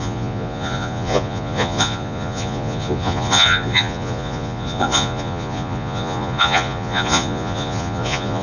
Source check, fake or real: fake